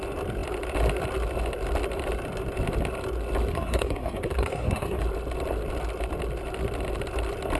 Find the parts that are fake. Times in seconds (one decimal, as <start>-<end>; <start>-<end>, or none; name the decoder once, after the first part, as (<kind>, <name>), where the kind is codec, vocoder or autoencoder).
3.5-5.0 (codec, SNAC)